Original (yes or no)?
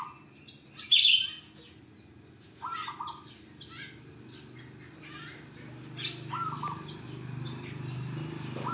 yes